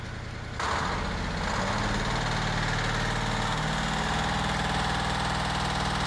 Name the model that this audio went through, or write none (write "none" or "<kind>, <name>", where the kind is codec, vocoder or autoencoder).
none